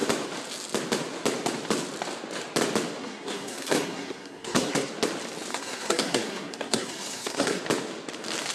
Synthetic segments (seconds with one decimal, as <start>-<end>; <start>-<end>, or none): 3.0-4.9; 5.5-7.6